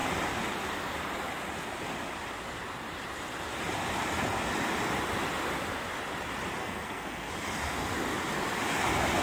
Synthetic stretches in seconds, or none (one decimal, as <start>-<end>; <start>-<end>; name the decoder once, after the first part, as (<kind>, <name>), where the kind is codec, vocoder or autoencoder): 6.6-7.3 (codec, SNAC)